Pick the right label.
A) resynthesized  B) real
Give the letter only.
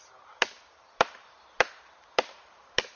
A